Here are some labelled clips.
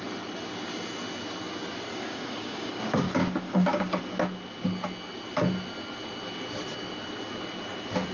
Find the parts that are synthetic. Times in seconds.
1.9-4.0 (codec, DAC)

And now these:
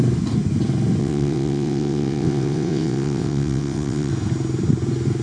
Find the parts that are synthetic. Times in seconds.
1.0-4.1 (vocoder, WaveNeXt)

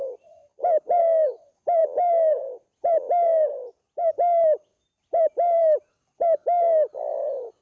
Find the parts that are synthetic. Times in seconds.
none

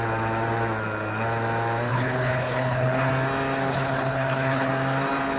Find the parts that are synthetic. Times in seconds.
1.9-3.1 (codec, HILCodec); 3.7-4.7

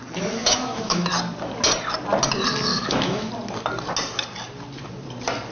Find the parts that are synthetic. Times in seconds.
0.4-1.1 (autoencoder, DAC-VAE); 2.7-3.3

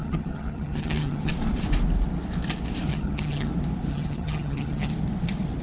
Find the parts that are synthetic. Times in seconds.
0.0-1.3 (vocoder, HiFi-GAN); 2.9-3.5; 3.9-4.9

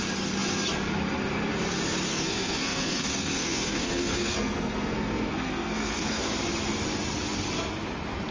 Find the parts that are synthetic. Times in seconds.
2.1-6.3 (codec, SNAC)

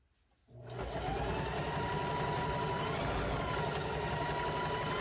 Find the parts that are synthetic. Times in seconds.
none